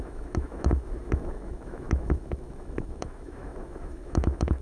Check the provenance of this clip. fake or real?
fake